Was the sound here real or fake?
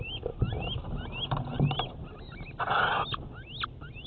real